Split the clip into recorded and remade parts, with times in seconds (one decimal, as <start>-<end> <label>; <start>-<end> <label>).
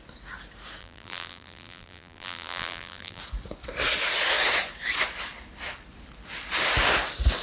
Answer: 0.0-0.8 recorded; 0.8-3.2 remade; 3.2-7.4 recorded